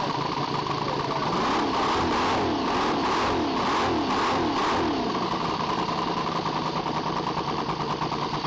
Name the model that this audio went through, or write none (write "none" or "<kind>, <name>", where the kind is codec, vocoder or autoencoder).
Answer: none